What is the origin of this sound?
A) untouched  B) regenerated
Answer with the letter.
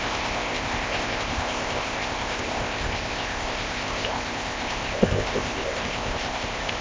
B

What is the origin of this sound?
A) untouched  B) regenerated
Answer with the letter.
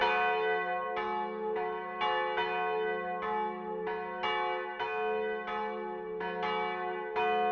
A